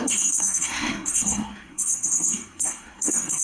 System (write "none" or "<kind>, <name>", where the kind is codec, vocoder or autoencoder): codec, SNAC